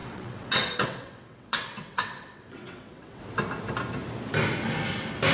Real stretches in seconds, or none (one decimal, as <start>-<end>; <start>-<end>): 3.2-5.3